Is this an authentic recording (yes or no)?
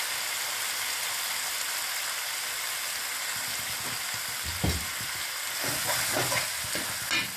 yes